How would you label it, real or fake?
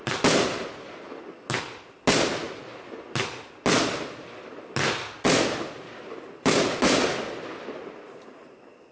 real